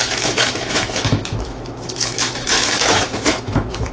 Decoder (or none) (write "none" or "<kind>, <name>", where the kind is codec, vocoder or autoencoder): autoencoder, DAC-VAE